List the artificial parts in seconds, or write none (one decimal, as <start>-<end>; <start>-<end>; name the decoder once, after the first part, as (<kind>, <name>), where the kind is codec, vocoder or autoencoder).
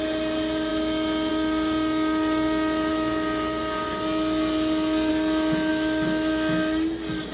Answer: none